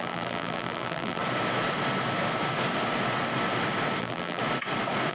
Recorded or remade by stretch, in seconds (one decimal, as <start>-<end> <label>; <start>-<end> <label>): 0.0-1.2 remade; 1.2-4.0 recorded; 4.0-4.4 remade; 4.4-5.1 recorded